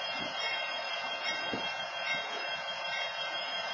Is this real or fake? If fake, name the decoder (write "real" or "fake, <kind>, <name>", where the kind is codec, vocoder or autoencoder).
fake, vocoder, Vocos